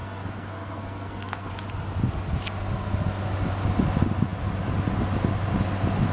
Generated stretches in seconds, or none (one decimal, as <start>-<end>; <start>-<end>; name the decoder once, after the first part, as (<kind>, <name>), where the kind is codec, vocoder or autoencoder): 0.0-1.5 (codec, SNAC)